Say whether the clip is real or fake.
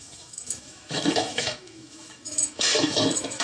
fake